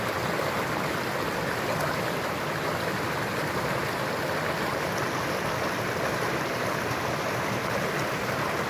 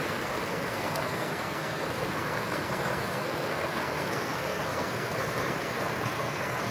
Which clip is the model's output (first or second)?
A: second